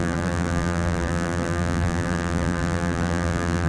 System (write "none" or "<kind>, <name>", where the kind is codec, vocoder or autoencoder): vocoder, BigVGAN v2